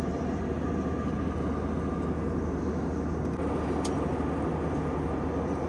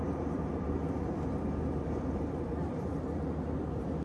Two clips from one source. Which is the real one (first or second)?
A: first